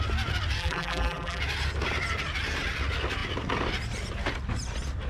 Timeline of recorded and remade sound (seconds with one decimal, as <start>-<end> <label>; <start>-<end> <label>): 0.0-0.6 recorded; 0.6-1.4 remade; 1.4-5.1 recorded